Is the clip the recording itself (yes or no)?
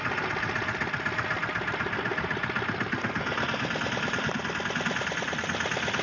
yes